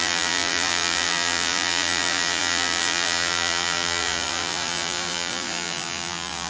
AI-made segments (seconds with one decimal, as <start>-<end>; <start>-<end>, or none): 0.0-6.5